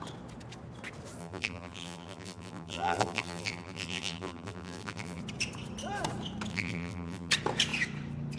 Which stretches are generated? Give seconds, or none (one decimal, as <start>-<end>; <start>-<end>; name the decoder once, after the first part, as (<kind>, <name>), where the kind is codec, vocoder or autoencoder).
1.2-5.2 (vocoder, BigVGAN v2); 6.5-7.3